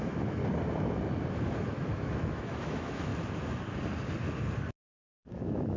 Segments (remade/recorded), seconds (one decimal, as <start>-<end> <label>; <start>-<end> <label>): 0.0-0.4 remade; 0.4-1.3 recorded; 1.3-3.1 remade; 3.1-5.3 recorded; 5.3-5.8 remade